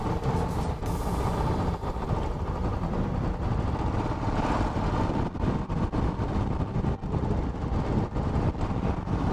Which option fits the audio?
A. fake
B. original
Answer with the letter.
B